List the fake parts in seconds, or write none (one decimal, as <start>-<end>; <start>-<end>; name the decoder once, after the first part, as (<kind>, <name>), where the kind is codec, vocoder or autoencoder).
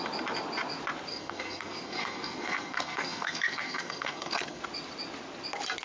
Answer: 1.1-4.6 (codec, SNAC)